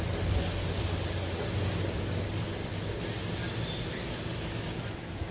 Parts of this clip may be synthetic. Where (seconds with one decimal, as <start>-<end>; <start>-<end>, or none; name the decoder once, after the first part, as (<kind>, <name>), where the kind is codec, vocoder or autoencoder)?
none